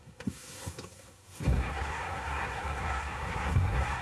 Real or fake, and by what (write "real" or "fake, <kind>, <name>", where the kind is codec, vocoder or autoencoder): fake, codec, SNAC